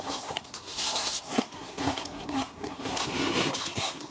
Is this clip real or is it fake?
fake